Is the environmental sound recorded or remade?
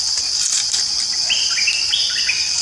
recorded